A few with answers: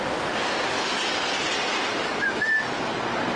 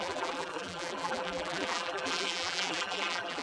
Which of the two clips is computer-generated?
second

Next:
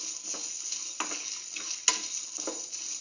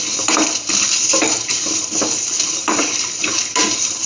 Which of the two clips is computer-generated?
second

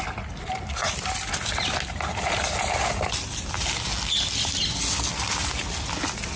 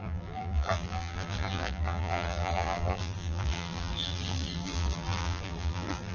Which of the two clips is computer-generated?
second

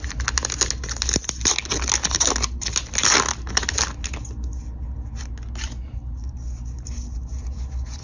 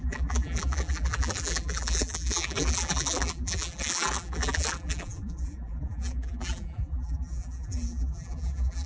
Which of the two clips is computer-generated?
second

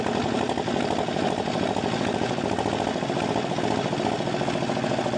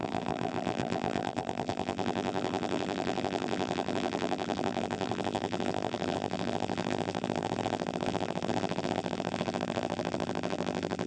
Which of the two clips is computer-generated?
second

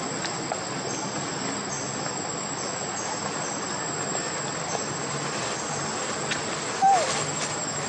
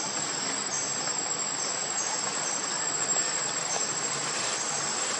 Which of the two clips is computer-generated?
second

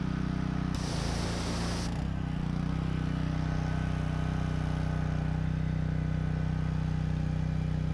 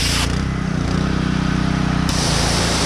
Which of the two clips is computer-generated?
second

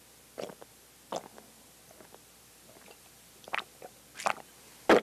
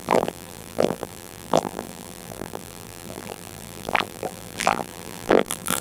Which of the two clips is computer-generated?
second